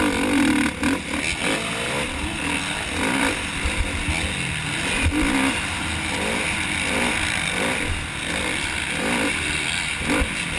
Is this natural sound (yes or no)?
yes